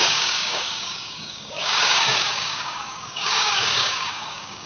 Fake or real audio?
fake